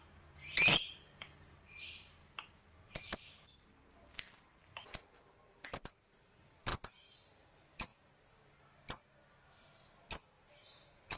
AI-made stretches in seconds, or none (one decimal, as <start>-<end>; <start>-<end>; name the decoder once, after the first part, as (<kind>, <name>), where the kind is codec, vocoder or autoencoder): 0.0-6.7 (vocoder, BigVGAN v2); 7.3-7.9; 10.6-11.2